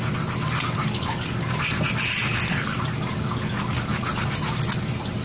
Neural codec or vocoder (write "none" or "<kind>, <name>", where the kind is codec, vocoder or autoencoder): none